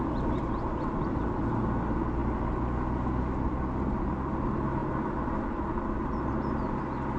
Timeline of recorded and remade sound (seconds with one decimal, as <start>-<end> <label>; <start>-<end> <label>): 0.0-7.2 recorded